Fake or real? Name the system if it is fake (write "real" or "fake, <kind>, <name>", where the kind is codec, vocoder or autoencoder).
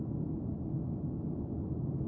real